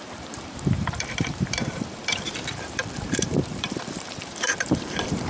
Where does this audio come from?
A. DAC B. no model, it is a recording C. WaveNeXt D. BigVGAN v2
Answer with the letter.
D